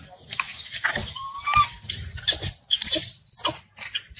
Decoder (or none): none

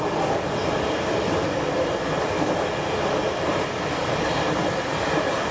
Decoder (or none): vocoder, BigVGAN v2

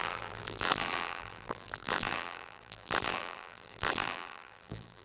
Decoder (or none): vocoder, BigVGAN v2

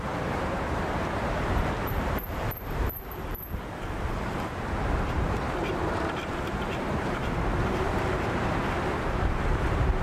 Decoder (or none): vocoder, BigVGAN v2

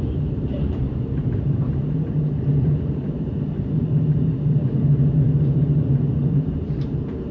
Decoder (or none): vocoder, BigVGAN v2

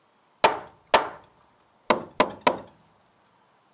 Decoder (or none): none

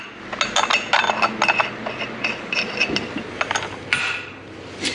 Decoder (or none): none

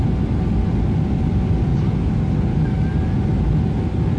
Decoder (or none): none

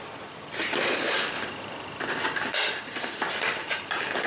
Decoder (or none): vocoder, BigVGAN v2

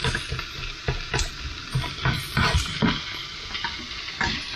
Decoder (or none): none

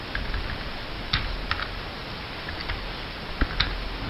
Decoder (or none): none